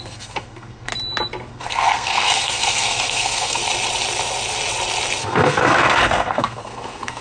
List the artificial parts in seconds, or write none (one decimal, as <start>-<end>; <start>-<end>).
0.0-0.9; 1.5-3.6; 5.2-7.2